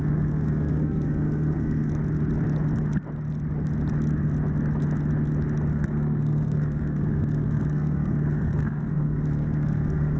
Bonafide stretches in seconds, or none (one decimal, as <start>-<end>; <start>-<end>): 2.0-5.7